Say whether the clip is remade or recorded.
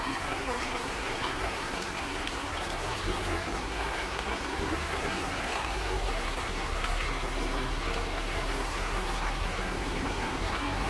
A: remade